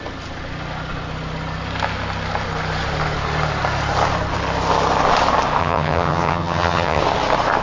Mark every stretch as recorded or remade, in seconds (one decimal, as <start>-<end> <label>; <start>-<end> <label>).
0.0-5.6 recorded; 5.6-7.0 remade; 7.0-7.6 recorded